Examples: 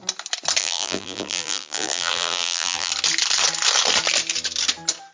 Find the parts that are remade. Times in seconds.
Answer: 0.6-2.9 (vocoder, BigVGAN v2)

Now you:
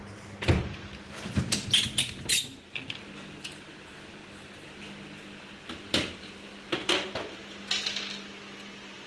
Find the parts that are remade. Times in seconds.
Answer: none

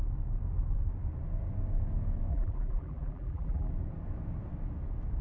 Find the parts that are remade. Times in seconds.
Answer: 2.3-3.7 (vocoder, BigVGAN v2)

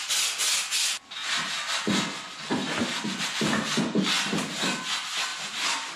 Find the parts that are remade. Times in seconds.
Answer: 5.3-6.0 (vocoder, BigVGAN v2)

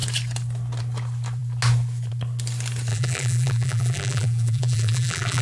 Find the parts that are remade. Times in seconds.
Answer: 2.9-5.4 (vocoder, BigVGAN v2)

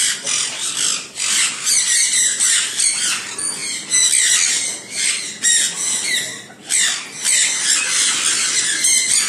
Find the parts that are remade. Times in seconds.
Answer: 0.0-0.7 (vocoder, BigVGAN v2)

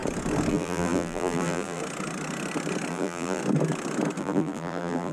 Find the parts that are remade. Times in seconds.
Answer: 0.5-1.8 (vocoder, BigVGAN v2); 2.9-3.4; 4.2-5.1

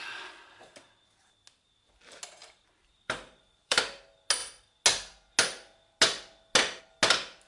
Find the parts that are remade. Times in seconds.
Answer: 2.4-3.8 (vocoder, BigVGAN v2)